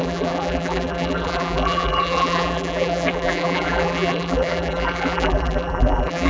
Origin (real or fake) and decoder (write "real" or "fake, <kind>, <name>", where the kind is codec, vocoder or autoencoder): fake, vocoder, BigVGAN v2